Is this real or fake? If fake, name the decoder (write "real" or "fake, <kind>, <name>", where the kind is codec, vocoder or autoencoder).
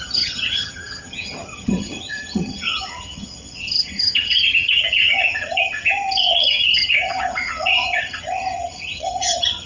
fake, vocoder, HiFi-GAN